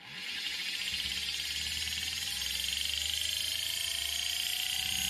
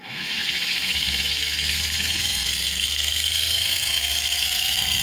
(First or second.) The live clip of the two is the first